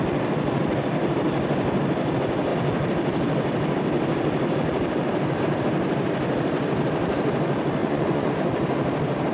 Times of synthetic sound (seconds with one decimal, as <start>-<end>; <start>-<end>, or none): 7.8-8.3